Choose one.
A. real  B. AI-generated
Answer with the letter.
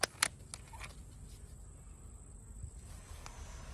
A